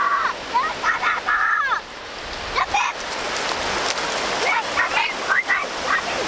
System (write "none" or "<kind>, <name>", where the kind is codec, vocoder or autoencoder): none